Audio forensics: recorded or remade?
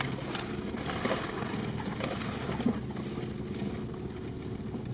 recorded